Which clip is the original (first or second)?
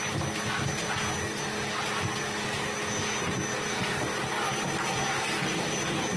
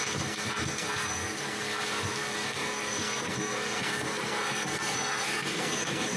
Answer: first